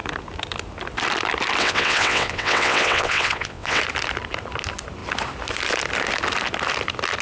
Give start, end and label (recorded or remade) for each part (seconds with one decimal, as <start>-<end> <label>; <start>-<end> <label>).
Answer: 0.0-1.6 recorded; 1.6-3.8 remade; 3.8-7.2 recorded